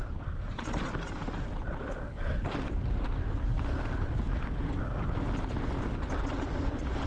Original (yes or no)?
yes